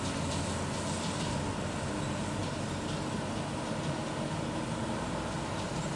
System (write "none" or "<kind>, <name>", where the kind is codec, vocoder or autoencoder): none